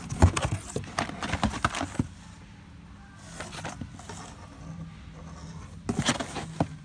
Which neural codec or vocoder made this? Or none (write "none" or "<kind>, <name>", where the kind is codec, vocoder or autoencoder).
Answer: none